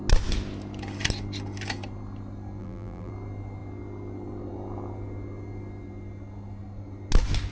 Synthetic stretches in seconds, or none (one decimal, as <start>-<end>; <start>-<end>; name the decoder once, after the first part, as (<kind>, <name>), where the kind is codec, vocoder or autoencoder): 2.6-3.1 (vocoder, BigVGAN v2)